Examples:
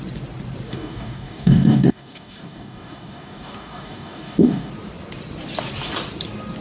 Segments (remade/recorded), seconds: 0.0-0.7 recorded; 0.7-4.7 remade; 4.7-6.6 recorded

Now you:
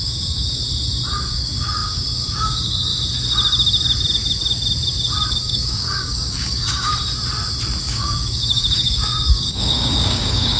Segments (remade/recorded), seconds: 0.0-0.6 remade; 0.6-1.3 recorded; 1.3-2.9 remade; 2.9-5.3 recorded; 5.3-6.9 remade; 6.9-7.8 recorded; 7.8-10.6 remade

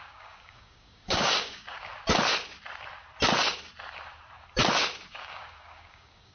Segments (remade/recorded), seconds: 0.0-1.9 remade; 1.9-5.1 recorded; 5.1-6.3 remade

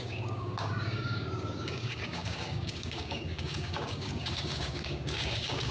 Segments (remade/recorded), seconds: 0.0-5.7 remade

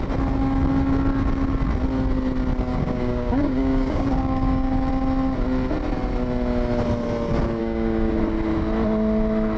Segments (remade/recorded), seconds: 0.0-2.7 recorded; 2.7-4.9 remade; 4.9-7.6 recorded; 7.6-8.1 remade; 8.1-9.6 recorded

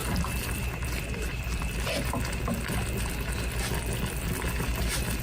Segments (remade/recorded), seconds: 0.0-5.2 recorded

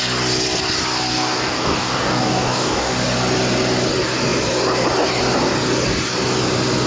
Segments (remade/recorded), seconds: 0.0-1.1 recorded; 1.1-2.9 remade; 2.9-6.9 recorded

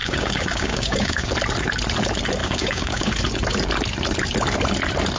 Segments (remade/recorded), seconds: 0.0-1.3 remade; 1.3-2.4 recorded; 2.4-3.1 remade; 3.1-5.2 recorded